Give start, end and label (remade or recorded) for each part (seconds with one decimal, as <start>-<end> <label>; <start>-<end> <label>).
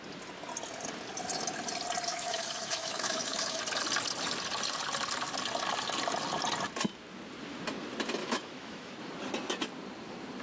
0.0-2.1 recorded; 2.1-3.6 remade; 3.6-8.2 recorded; 8.2-8.9 remade; 8.9-10.4 recorded